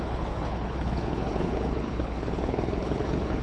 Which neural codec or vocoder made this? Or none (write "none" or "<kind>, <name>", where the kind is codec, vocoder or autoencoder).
codec, HILCodec